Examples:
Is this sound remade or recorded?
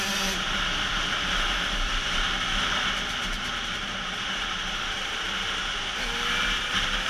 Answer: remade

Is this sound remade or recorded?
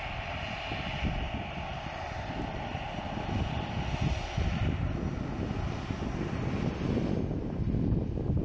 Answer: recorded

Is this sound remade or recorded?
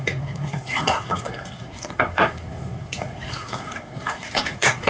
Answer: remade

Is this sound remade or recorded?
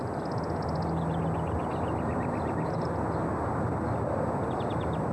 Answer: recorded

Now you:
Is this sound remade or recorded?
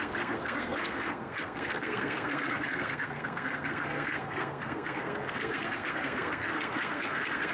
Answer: remade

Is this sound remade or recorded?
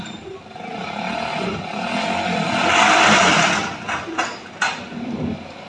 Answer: recorded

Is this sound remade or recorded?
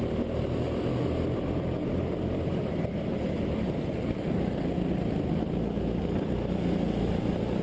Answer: recorded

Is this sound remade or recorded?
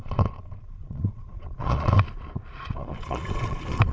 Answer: remade